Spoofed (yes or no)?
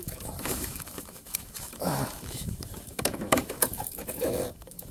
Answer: yes